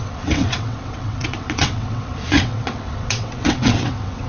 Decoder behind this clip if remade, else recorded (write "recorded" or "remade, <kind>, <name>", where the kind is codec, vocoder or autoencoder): remade, vocoder, WaveNeXt